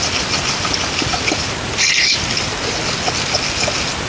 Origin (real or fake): real